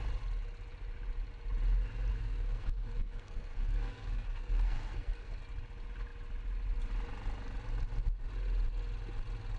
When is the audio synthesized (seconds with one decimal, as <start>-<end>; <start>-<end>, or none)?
2.1-5.4